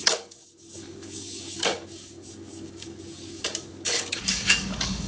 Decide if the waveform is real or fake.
fake